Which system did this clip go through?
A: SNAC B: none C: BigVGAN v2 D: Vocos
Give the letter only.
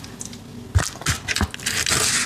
B